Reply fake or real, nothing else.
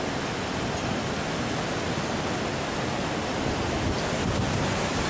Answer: real